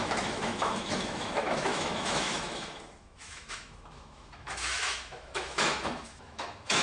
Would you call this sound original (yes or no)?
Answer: no